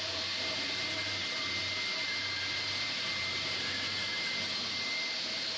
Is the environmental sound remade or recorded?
remade